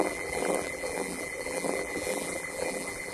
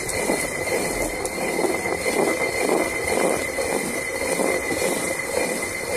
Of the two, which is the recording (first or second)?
second